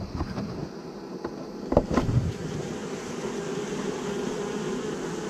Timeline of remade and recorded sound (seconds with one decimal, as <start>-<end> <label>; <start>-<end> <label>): 0.0-0.6 remade; 0.6-1.3 recorded; 1.3-2.8 remade; 2.8-5.3 recorded